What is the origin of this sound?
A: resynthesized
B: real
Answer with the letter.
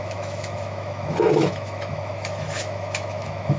A